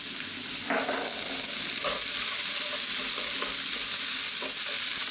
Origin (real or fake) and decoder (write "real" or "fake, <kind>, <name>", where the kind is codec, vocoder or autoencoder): real